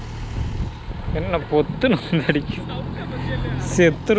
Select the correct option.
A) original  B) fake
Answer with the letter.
A